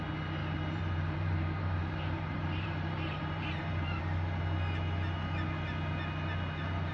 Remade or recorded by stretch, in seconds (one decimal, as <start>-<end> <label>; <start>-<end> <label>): 0.0-0.4 recorded; 0.4-4.0 remade; 4.0-6.9 recorded